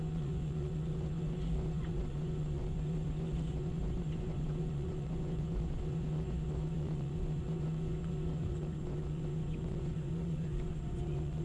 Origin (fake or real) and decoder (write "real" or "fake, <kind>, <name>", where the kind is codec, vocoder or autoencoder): fake, vocoder, Vocos